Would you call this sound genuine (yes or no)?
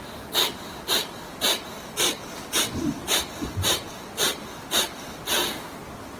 yes